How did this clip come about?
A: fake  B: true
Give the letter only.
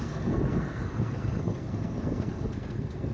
A